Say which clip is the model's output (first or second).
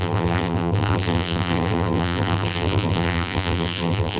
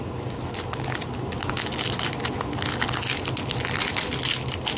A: first